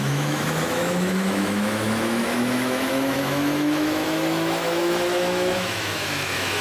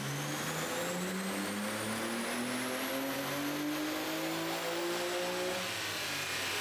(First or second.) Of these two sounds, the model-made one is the first